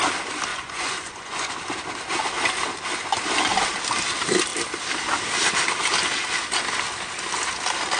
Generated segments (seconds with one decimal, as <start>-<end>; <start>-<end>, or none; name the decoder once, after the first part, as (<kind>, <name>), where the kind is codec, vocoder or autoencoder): 0.5-1.5 (vocoder, Vocos)

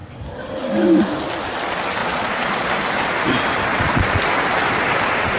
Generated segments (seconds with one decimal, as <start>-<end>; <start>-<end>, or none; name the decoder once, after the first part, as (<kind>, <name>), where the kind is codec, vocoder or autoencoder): 2.0-2.7 (vocoder, Vocos); 3.7-4.2